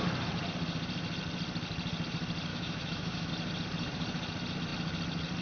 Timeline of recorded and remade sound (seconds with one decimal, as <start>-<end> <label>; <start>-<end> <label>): 0.0-2.5 recorded; 2.5-3.3 remade; 3.3-5.4 recorded